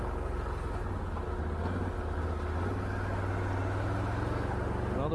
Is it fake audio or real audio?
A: real